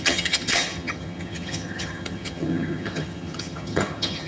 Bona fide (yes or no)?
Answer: no